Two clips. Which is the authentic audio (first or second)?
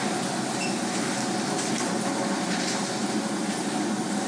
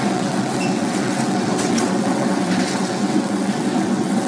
first